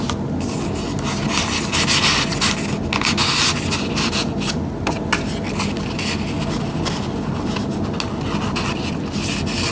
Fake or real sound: real